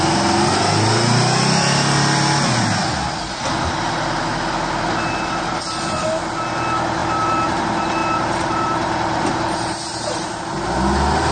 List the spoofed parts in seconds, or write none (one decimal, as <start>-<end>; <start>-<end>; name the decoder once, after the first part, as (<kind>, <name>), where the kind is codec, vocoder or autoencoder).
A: 7.0-7.6 (vocoder, BigVGAN v2); 8.0-10.4